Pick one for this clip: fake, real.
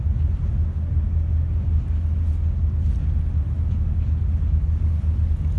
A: real